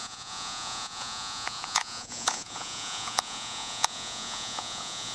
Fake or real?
fake